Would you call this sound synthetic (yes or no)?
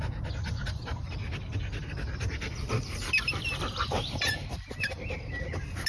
no